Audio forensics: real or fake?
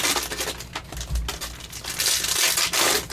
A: real